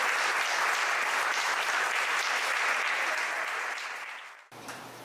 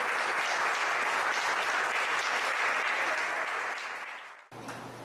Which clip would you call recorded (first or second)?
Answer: second